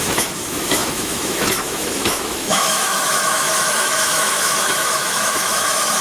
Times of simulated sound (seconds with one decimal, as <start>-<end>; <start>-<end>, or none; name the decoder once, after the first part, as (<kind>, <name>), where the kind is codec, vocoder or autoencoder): 0.0-6.0 (autoencoder, DAC-VAE)